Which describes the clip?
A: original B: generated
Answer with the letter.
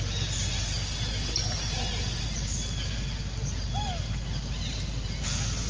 A